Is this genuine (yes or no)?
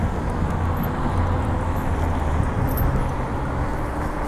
yes